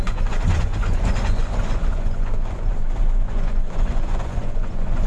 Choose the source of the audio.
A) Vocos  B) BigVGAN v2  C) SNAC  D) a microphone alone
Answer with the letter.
A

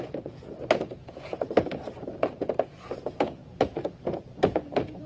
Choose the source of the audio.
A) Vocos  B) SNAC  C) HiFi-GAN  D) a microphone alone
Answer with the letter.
A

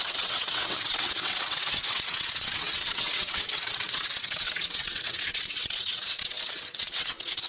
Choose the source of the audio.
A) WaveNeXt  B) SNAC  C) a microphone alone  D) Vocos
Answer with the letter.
A